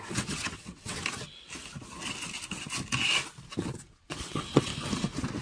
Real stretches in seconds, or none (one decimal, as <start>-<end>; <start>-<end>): 1.0-3.6; 4.7-5.4